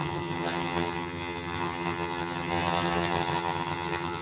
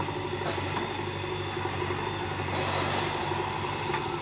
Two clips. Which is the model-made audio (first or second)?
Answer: first